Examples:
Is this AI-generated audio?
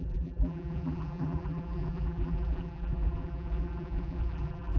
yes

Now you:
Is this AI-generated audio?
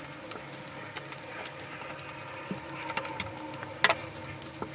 no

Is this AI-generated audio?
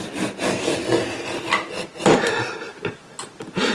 no